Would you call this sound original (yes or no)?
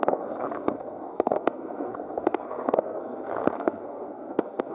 no